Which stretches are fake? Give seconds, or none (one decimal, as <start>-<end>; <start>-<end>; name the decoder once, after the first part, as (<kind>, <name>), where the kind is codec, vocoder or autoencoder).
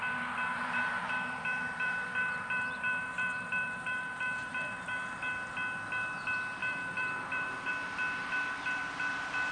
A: 0.5-5.1 (vocoder, BigVGAN v2); 6.6-7.7